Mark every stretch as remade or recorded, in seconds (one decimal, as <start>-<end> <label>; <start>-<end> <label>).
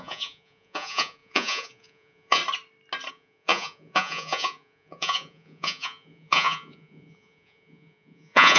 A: 0.0-2.4 remade; 2.4-3.1 recorded; 3.1-8.6 remade